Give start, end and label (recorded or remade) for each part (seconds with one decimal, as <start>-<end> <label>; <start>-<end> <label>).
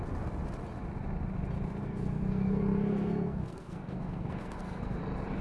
0.0-1.8 recorded; 1.8-5.0 remade; 5.0-5.4 recorded